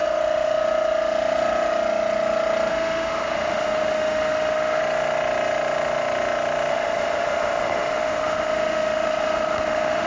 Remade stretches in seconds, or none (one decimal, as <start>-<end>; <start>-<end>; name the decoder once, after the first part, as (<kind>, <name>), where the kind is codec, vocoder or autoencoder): 2.7-4.8 (autoencoder, DAC-VAE); 6.7-10.1